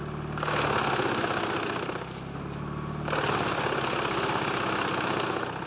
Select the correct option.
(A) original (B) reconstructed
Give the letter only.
A